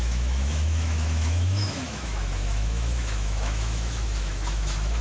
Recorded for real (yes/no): no